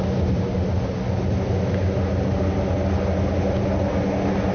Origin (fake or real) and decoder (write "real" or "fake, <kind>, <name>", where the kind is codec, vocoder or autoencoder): real